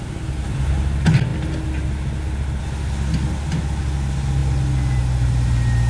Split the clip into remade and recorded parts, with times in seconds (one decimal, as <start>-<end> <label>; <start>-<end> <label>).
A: 0.0-5.9 recorded